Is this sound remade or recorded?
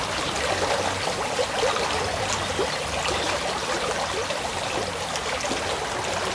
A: recorded